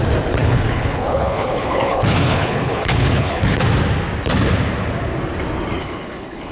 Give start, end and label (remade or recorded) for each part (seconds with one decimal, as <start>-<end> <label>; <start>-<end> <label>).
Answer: 0.0-0.4 recorded; 0.4-3.4 remade; 3.4-5.8 recorded; 5.8-6.5 remade